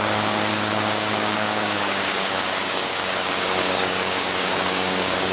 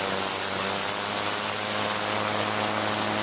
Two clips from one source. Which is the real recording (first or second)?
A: second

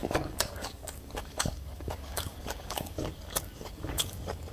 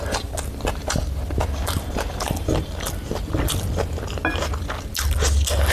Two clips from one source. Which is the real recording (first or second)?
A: second